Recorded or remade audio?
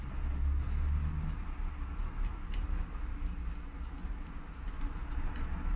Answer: recorded